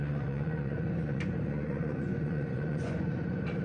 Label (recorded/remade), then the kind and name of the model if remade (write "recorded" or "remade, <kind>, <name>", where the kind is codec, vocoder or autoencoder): remade, vocoder, Vocos